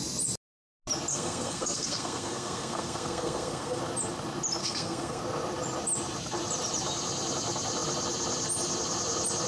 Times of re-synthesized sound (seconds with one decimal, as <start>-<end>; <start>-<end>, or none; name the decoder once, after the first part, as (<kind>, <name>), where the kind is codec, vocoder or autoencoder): 1.1-3.8 (codec, SNAC); 4.6-5.2